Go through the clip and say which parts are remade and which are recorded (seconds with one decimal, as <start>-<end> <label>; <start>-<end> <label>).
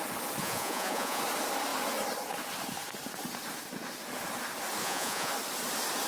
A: 0.0-0.4 recorded; 0.4-1.2 remade; 1.2-4.8 recorded; 4.8-5.3 remade; 5.3-6.1 recorded